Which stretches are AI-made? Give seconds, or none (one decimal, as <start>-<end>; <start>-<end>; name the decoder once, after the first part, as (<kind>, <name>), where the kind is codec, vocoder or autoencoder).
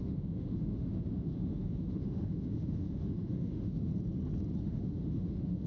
0.0-3.9 (autoencoder, DAC-VAE); 4.6-5.7